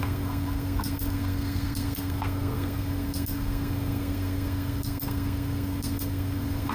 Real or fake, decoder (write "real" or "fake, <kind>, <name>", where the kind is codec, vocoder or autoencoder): fake, codec, SNAC